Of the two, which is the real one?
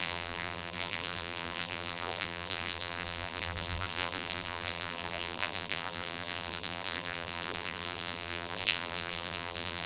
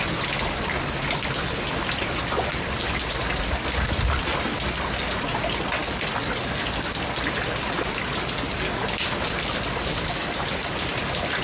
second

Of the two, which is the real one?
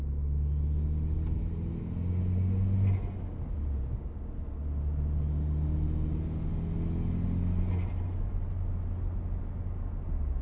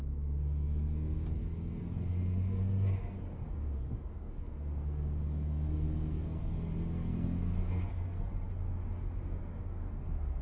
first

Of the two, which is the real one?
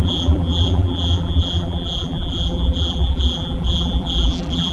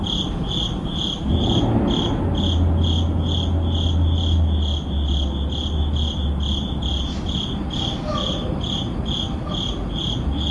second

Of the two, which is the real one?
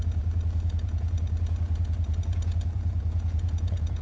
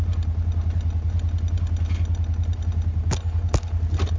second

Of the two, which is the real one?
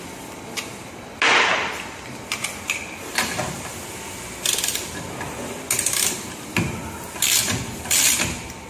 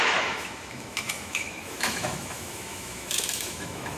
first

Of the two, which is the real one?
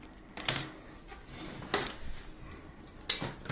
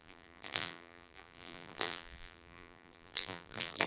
first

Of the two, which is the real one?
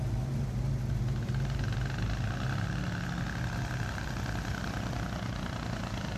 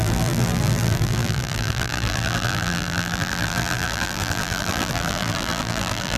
first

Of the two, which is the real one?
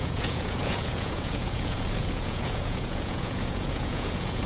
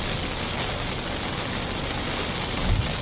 second